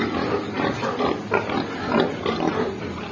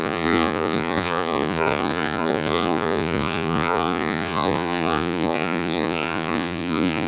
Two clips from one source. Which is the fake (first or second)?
second